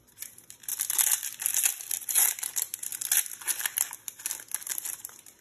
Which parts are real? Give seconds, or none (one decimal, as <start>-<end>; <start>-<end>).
0.0-5.4